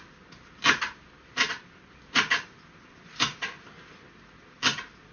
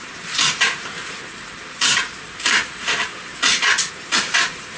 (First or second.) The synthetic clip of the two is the second